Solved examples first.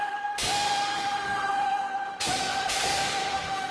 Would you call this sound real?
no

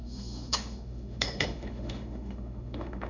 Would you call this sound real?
no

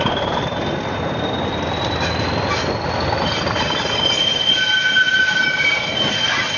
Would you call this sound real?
yes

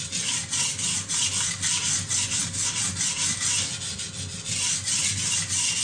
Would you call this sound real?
yes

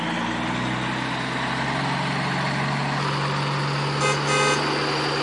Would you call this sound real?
yes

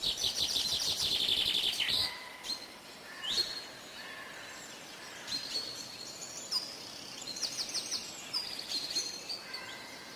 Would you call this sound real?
yes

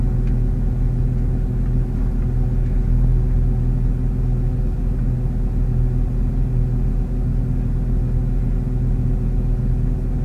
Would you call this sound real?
yes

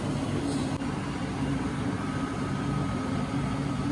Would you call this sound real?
yes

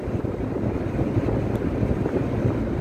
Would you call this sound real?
yes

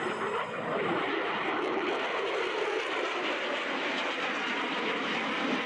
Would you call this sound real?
yes